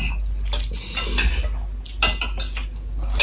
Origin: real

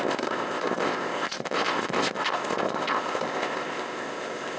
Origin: fake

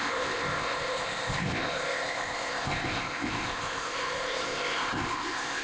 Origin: fake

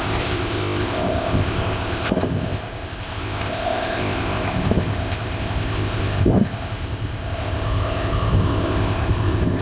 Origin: fake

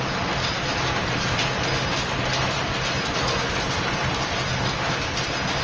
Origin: real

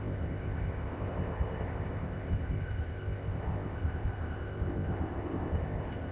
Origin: fake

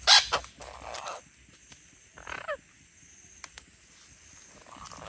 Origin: real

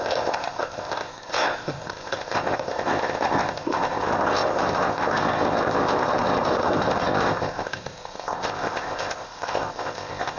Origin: fake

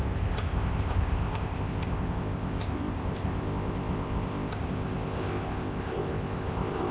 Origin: fake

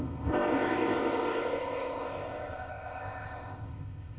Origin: fake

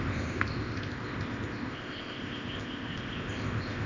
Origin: fake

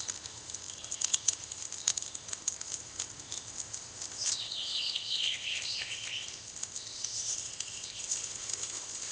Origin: fake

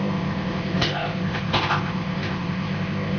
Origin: fake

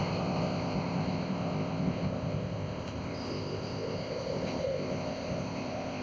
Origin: fake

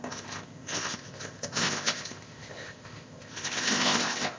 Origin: fake